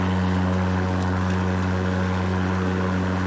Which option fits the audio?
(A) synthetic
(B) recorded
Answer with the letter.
B